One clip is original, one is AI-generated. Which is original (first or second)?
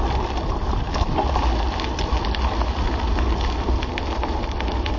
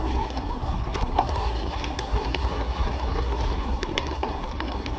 first